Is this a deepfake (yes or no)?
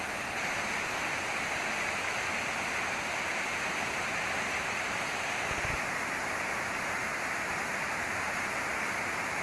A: no